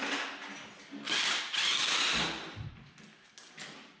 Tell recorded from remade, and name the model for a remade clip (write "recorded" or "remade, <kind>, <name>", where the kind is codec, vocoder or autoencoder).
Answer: recorded